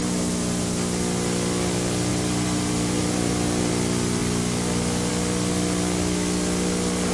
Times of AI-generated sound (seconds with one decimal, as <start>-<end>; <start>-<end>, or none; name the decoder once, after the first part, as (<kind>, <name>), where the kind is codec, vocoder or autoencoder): 2.1-3.7 (vocoder, BigVGAN v2)